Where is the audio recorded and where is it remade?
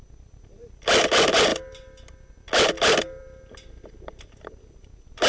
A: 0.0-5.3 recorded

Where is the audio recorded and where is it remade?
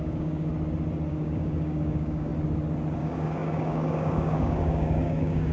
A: 0.0-0.5 remade; 0.5-1.1 recorded; 1.1-2.3 remade; 2.3-3.0 recorded; 3.0-5.5 remade